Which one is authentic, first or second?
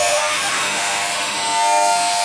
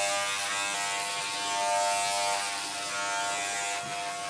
second